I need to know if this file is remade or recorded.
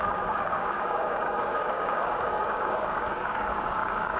remade